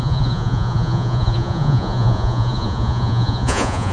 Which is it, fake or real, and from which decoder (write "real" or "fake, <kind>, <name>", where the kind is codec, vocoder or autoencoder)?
fake, vocoder, Vocos